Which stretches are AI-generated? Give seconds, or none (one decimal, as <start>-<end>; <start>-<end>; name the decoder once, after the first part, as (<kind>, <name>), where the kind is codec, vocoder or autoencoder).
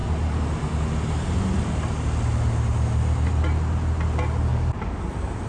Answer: 4.5-5.1 (codec, DAC)